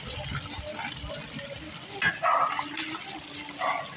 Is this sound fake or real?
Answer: real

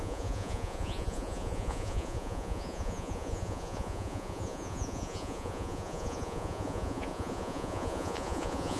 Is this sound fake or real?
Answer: fake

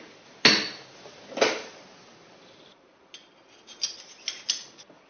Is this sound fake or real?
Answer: real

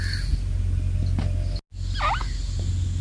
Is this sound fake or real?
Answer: real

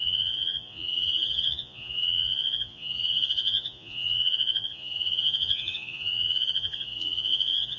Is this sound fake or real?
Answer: fake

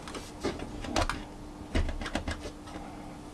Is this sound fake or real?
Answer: real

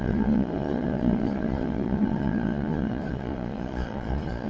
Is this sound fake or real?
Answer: fake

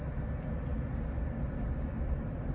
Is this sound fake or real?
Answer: real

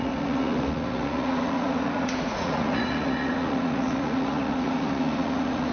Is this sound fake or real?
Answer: fake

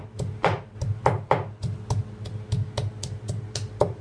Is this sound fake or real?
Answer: real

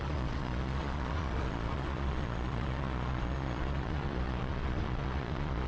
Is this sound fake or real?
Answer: fake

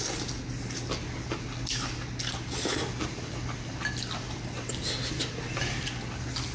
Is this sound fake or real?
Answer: real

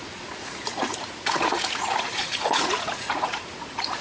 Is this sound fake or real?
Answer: fake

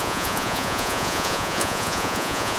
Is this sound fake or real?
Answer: fake